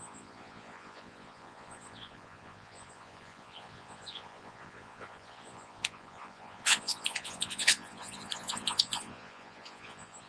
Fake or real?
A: fake